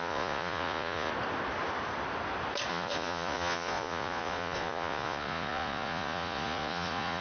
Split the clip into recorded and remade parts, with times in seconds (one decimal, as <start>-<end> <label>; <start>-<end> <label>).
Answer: 0.0-1.1 remade; 1.1-2.7 recorded; 2.7-7.2 remade